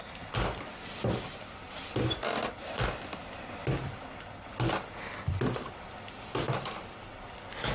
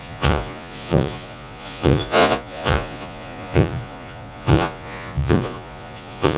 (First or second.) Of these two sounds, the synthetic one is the second